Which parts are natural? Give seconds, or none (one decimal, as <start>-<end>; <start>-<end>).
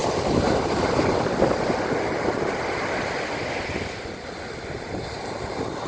0.0-5.9